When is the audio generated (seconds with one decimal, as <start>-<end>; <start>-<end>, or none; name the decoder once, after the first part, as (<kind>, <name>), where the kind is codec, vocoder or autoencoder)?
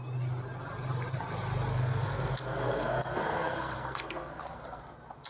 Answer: 1.7-4.8 (codec, SNAC)